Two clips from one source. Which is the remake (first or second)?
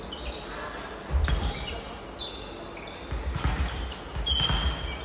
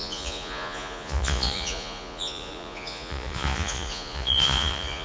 second